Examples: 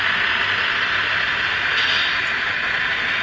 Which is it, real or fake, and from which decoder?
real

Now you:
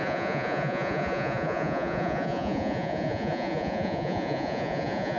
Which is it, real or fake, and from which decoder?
fake, vocoder, Vocos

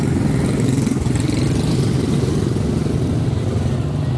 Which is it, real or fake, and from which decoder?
real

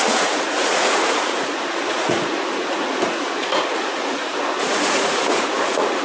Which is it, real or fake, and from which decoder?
fake, vocoder, Vocos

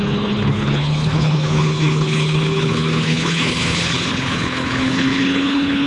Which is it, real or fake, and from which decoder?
fake, codec, HILCodec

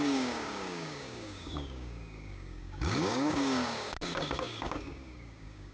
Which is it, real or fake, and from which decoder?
fake, codec, DAC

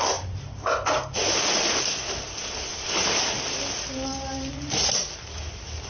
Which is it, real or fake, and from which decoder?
real